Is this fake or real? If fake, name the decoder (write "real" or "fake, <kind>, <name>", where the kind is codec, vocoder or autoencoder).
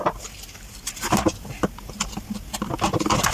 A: real